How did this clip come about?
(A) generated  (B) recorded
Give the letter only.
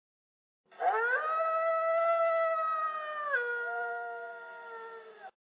B